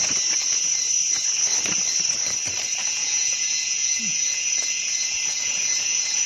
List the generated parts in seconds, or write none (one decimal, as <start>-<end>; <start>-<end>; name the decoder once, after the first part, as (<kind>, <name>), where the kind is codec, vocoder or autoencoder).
2.8-6.3 (vocoder, Vocos)